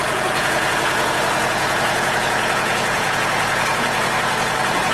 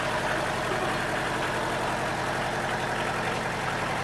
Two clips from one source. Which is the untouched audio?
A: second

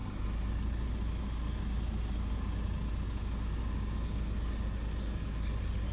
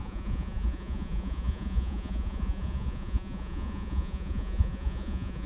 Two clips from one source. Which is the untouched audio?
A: first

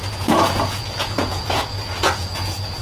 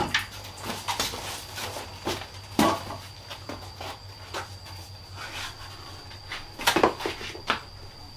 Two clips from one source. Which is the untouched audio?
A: second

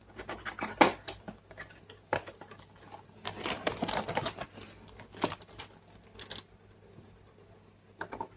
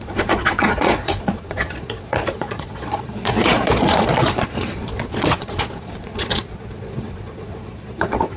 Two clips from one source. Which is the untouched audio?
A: first